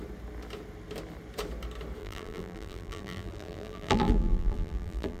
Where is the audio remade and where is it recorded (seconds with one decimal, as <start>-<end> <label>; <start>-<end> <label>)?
0.0-2.0 recorded; 2.0-5.2 remade